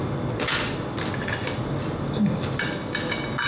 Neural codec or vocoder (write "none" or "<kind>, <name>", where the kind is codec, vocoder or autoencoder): none